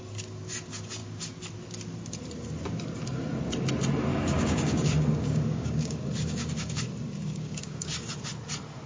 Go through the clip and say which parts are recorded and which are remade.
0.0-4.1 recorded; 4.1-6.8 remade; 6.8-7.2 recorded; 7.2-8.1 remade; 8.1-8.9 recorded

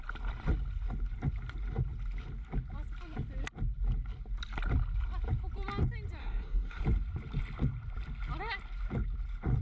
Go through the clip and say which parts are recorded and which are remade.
0.0-6.2 recorded; 6.2-6.8 remade; 6.8-9.6 recorded

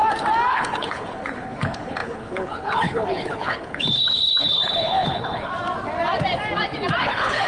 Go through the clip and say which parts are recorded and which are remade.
0.0-0.5 recorded; 0.5-5.5 remade; 5.5-7.0 recorded; 7.0-7.5 remade

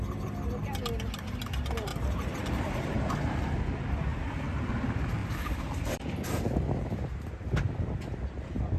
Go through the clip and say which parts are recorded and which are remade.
0.0-1.9 recorded; 1.9-3.1 remade; 3.1-5.2 recorded; 5.2-7.1 remade; 7.1-8.8 recorded

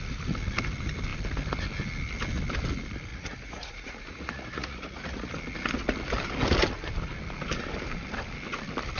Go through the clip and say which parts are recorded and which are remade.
0.0-3.1 recorded; 3.1-5.3 remade; 5.3-9.0 recorded

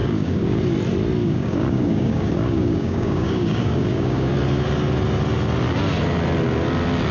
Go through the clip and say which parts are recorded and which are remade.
0.0-0.6 remade; 0.6-1.2 recorded; 1.2-4.3 remade; 4.3-7.1 recorded

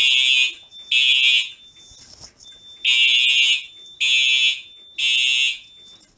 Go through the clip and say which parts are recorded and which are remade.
0.0-6.2 recorded

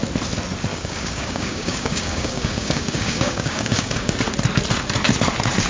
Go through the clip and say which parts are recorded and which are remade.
0.0-0.7 recorded; 0.7-4.1 remade; 4.1-5.7 recorded